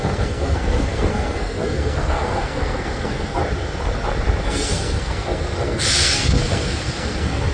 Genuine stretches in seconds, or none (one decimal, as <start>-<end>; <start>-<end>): 3.4-4.4